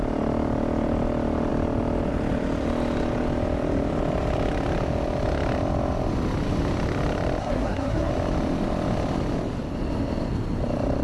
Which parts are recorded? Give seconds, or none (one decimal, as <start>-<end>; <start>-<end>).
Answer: 0.0-7.4; 8.1-11.0